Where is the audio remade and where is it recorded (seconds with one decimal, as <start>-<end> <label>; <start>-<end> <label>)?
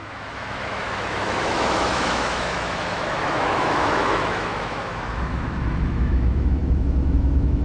0.0-7.6 remade